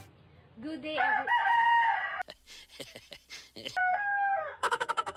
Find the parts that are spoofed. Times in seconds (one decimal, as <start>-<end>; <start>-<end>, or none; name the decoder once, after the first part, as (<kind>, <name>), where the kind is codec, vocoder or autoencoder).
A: 3.8-5.2 (codec, SNAC)